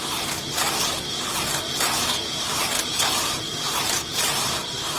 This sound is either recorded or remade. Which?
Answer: recorded